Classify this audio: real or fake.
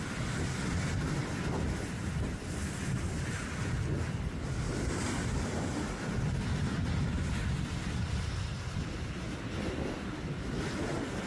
real